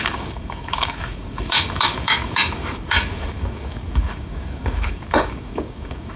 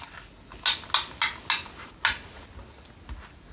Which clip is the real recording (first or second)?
second